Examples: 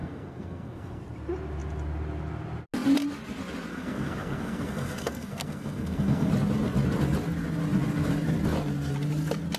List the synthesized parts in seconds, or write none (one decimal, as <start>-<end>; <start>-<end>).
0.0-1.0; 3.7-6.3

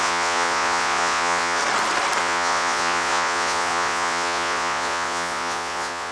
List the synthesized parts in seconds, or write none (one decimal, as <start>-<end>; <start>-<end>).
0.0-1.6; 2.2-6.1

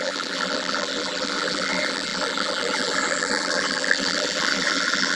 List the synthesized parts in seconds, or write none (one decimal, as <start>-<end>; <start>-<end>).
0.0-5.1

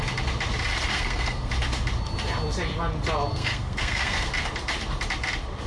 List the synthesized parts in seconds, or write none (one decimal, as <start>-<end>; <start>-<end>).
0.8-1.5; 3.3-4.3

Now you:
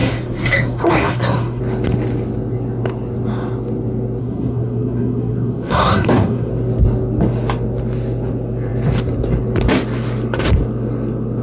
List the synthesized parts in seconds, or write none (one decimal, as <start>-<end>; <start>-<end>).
0.0-1.6; 4.2-6.5